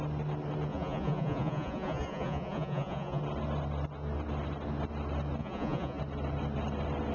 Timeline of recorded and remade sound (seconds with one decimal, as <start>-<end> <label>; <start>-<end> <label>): 0.0-0.7 recorded; 0.7-3.2 remade; 3.2-5.4 recorded; 5.4-6.0 remade; 6.0-7.1 recorded